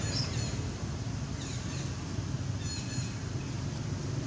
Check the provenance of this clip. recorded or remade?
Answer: recorded